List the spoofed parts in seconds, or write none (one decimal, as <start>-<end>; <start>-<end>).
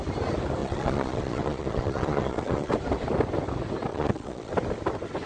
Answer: 0.6-2.7; 3.9-4.5